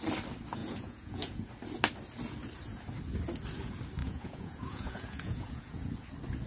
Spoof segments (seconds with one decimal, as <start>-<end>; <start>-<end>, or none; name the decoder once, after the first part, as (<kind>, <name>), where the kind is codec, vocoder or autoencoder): 0.6-1.5 (vocoder, Vocos); 4.0-5.9